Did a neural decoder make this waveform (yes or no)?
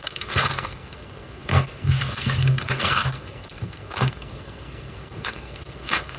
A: yes